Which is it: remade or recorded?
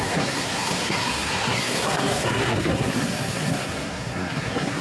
remade